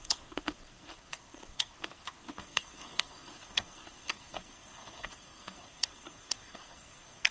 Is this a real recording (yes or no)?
no